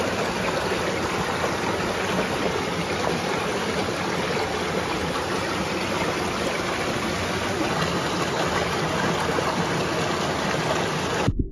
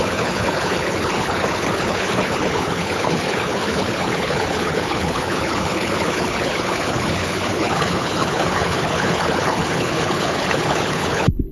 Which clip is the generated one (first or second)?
second